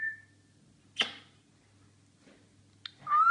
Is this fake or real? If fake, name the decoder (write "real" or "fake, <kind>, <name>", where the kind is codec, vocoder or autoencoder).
real